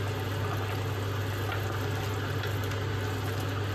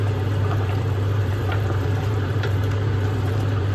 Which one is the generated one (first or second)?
second